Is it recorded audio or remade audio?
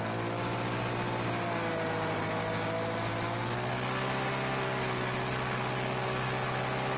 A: recorded